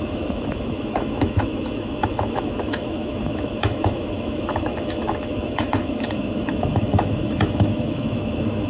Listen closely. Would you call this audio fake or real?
fake